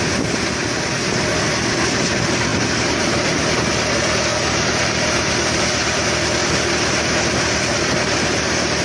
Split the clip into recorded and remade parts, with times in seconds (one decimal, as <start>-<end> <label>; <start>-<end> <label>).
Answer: 0.0-4.3 recorded; 4.3-5.3 remade; 5.3-8.8 recorded